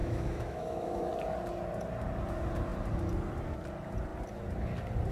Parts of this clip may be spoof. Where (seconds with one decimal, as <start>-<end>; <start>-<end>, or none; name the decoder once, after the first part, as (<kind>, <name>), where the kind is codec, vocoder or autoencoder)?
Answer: 0.0-1.1 (autoencoder, DAC-VAE)